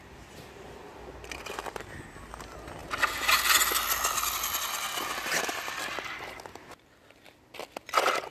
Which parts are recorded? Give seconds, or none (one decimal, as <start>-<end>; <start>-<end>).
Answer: 0.0-8.3

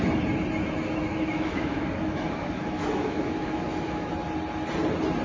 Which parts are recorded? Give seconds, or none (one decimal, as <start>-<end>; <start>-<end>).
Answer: 0.0-1.0; 4.1-5.2

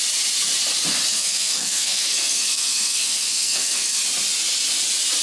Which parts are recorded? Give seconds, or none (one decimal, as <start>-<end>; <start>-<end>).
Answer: 0.0-1.1; 4.0-5.2

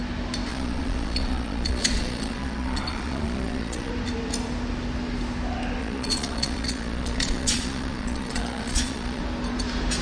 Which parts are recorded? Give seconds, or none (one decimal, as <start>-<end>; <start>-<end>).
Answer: 0.0-0.5; 3.9-5.8; 9.2-10.0

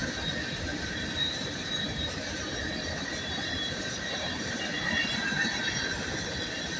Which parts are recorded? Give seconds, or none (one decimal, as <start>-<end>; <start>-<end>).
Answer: 0.0-0.5; 5.1-5.6